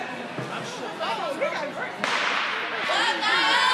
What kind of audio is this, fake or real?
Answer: real